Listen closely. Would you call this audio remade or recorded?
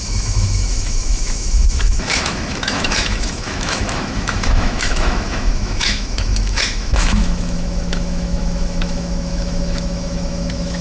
remade